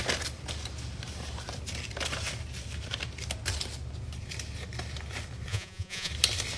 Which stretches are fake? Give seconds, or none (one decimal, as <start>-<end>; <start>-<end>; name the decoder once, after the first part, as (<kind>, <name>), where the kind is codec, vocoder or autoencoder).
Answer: 5.5-6.1 (vocoder, Vocos)